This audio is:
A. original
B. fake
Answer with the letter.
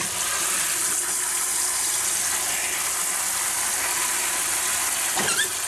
A